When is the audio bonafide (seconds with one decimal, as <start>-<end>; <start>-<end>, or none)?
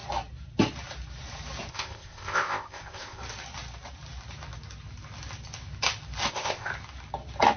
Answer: 0.0-1.7; 3.2-6.3; 6.7-7.6